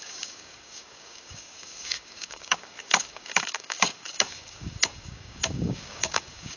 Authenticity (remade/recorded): remade